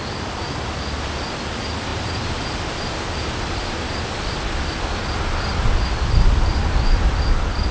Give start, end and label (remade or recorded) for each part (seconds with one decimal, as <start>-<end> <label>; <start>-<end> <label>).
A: 0.0-1.9 recorded; 1.9-4.0 remade; 4.0-6.6 recorded; 6.6-7.2 remade; 7.2-7.7 recorded